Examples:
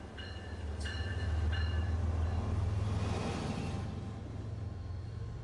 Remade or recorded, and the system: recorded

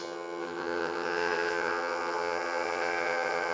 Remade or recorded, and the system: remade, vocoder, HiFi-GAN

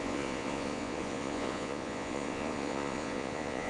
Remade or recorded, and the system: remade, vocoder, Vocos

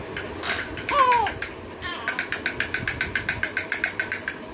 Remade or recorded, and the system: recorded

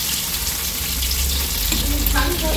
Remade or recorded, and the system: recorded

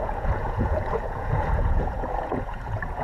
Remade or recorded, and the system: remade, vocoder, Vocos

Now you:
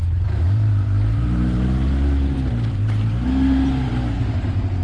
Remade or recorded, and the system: remade, vocoder, BigVGAN v2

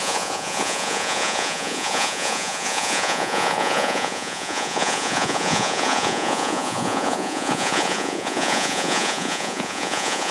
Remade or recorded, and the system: remade, vocoder, Vocos